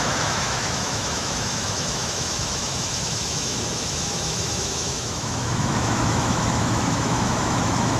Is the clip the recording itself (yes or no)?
no